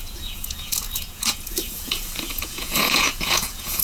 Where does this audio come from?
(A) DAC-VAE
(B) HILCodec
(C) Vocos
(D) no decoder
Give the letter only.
C